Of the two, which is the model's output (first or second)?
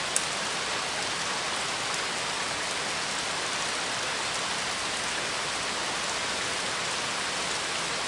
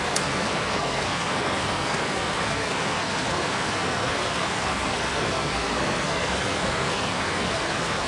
second